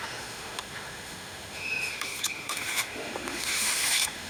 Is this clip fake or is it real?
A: fake